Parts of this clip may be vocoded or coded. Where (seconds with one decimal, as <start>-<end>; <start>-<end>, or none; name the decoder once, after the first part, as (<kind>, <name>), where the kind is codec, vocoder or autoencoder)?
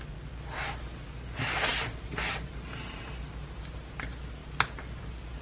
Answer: none